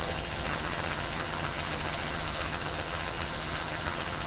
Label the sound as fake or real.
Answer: fake